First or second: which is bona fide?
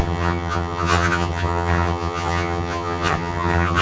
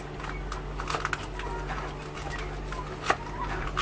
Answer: second